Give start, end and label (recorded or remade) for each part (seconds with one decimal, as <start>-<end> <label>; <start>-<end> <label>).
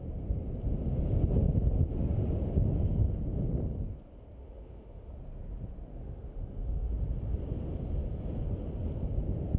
0.0-4.4 recorded; 4.4-5.1 remade; 5.1-5.9 recorded; 5.9-6.9 remade; 6.9-9.6 recorded